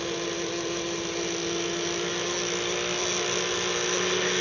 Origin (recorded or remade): recorded